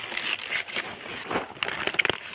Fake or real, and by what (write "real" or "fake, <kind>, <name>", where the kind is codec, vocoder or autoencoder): real